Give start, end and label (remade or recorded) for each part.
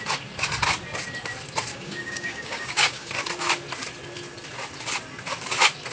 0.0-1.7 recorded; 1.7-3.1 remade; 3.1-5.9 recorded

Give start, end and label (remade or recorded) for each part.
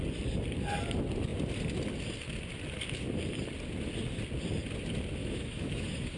0.0-5.2 recorded; 5.2-6.2 remade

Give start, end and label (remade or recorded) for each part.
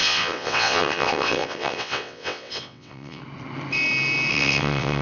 0.0-3.2 remade; 3.2-4.3 recorded; 4.3-5.0 remade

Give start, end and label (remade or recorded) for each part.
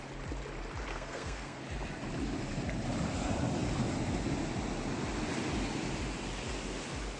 0.0-0.9 recorded; 0.9-1.6 remade; 1.6-7.2 recorded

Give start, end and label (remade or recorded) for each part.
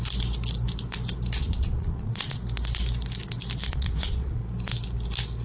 0.0-1.4 recorded; 1.4-2.4 remade; 2.4-3.7 recorded; 3.7-4.4 remade; 4.4-5.4 recorded